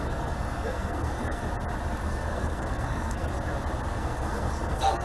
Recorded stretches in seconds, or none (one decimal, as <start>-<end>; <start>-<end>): 1.4-2.0; 3.3-3.9